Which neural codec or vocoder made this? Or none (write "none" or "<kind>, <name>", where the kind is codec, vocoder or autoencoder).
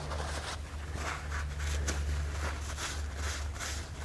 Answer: none